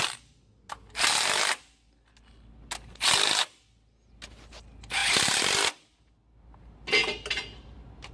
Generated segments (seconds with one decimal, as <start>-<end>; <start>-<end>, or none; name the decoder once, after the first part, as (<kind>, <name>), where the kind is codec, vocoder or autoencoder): none